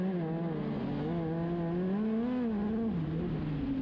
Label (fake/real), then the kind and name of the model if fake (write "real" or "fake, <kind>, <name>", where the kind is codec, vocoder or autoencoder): real